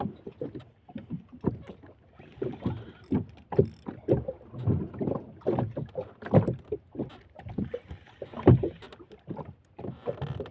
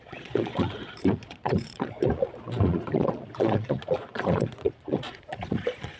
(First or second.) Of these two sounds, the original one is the first